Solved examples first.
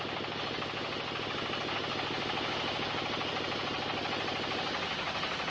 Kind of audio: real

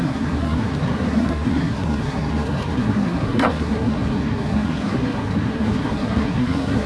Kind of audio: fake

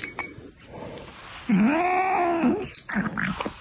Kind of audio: real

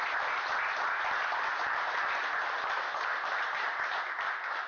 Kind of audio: real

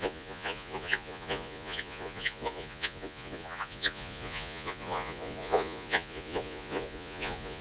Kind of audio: fake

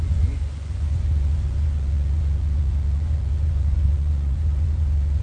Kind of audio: fake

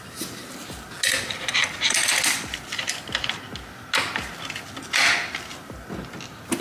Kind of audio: real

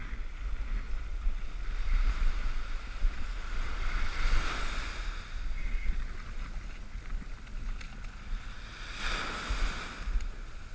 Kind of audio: real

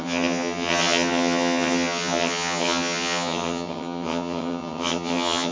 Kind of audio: fake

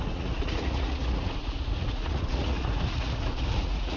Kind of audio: fake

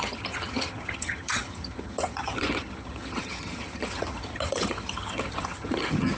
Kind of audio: fake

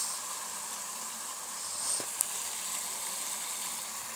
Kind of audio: real